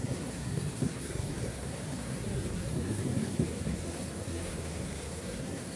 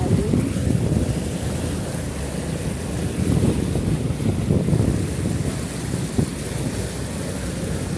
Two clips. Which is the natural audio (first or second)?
second